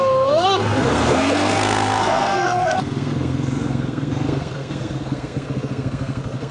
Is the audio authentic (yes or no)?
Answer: no